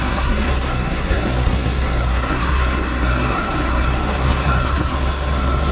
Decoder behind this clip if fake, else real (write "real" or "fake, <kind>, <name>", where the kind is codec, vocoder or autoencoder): fake, codec, SNAC